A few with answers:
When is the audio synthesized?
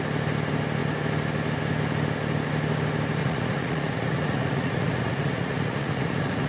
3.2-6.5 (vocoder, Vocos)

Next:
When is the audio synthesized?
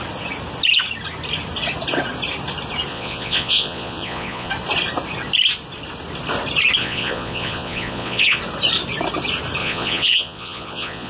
2.9-4.5 (vocoder, Vocos); 6.8-8.4; 9.6-11.1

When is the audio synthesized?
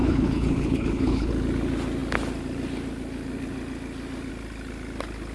0.0-1.3 (codec, HILCodec)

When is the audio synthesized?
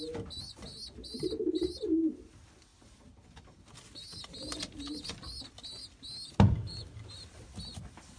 none